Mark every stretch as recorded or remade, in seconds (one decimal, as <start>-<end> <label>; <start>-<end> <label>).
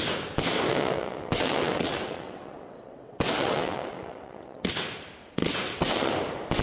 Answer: 0.0-0.7 recorded; 0.7-4.7 remade; 4.7-5.4 recorded; 5.4-6.1 remade; 6.1-6.6 recorded